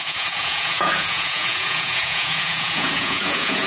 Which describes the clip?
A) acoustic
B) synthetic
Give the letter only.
B